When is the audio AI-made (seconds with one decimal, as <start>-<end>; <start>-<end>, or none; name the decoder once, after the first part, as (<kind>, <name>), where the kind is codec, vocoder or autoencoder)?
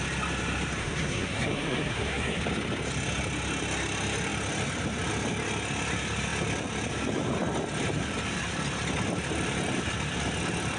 0.8-2.4 (codec, SNAC)